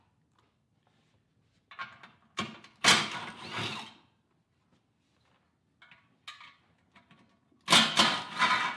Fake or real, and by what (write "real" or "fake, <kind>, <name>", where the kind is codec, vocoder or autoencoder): real